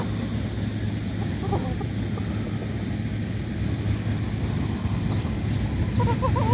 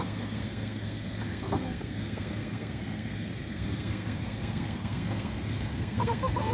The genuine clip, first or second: first